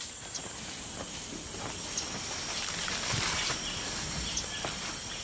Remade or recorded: recorded